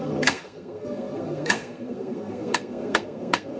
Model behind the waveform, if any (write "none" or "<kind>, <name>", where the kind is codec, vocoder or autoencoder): codec, SNAC